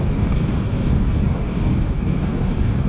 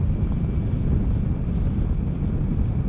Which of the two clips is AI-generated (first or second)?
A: first